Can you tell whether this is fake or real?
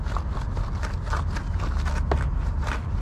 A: real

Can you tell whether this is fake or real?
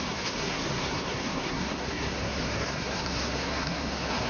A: fake